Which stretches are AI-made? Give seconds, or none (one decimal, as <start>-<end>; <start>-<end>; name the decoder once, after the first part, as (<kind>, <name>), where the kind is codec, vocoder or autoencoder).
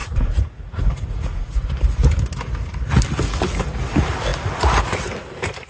0.0-1.7 (vocoder, Vocos)